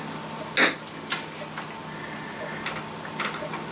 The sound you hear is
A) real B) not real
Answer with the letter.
A